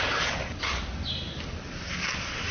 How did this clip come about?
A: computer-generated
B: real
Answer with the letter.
B